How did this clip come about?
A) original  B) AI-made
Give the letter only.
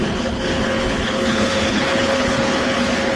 B